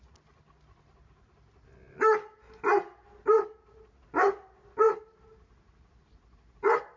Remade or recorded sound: recorded